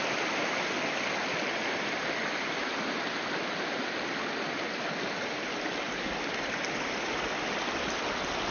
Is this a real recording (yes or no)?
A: yes